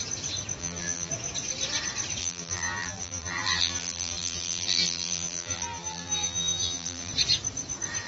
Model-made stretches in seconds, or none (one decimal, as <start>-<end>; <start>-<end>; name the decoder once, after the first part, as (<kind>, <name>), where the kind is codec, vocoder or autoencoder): 0.6-1.1 (vocoder, BigVGAN v2); 2.2-7.1